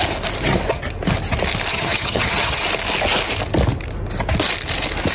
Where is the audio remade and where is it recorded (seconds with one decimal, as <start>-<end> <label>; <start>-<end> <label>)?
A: 0.0-1.7 recorded; 1.7-2.6 remade; 2.6-5.1 recorded